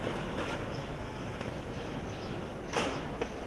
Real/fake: fake